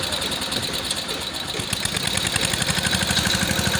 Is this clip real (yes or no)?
yes